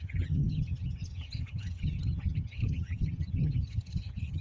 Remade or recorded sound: remade